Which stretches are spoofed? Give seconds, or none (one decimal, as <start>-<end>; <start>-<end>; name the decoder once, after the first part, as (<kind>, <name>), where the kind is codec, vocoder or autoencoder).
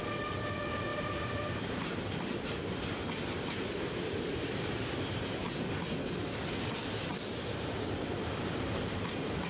0.9-5.7 (vocoder, BigVGAN v2); 7.1-8.3